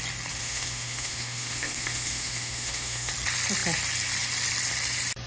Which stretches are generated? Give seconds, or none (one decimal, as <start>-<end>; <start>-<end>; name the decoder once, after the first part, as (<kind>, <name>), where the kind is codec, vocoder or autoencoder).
0.4-3.1 (autoencoder, DAC-VAE)

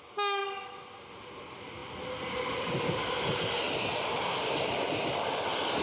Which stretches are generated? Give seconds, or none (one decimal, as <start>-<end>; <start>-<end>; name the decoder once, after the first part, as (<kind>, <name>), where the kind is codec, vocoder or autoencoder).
none

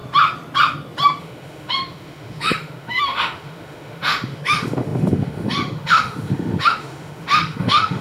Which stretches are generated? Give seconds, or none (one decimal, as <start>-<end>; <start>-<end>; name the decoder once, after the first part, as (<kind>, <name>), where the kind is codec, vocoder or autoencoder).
1.2-8.0 (autoencoder, DAC-VAE)

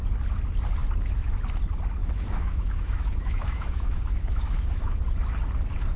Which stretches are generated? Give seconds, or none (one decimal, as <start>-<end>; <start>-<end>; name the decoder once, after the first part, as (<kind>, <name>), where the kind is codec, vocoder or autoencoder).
2.0-5.0 (autoencoder, DAC-VAE)

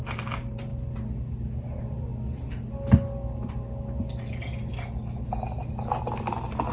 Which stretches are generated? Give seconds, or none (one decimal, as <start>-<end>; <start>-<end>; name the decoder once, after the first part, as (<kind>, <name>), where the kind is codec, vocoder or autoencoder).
none

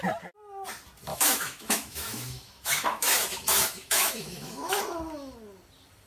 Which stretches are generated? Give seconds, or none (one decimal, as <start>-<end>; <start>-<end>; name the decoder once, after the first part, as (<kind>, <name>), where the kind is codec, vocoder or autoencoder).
1.1-4.8 (autoencoder, DAC-VAE)

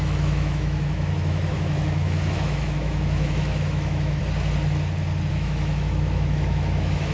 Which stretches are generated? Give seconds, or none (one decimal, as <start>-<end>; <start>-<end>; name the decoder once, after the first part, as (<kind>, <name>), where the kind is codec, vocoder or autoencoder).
0.0-4.2 (autoencoder, DAC-VAE); 5.3-7.1

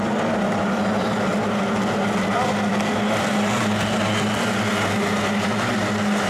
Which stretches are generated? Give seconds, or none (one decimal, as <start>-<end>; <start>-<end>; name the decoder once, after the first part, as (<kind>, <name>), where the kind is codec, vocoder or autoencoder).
none